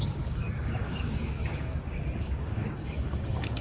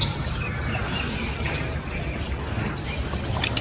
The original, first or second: second